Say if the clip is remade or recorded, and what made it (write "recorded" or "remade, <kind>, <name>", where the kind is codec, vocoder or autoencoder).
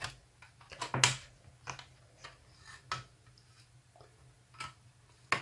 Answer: recorded